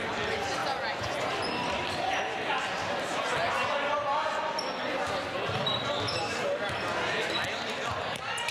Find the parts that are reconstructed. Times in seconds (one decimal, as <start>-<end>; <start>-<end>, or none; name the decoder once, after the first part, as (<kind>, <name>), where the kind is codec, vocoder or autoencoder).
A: none